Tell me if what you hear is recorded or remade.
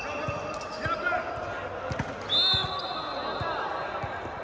recorded